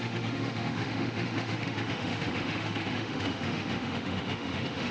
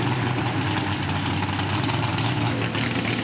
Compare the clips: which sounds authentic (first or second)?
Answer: second